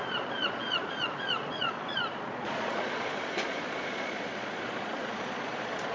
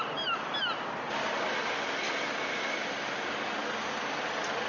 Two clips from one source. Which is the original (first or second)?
second